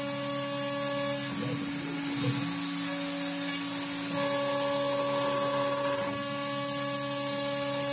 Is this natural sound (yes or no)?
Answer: yes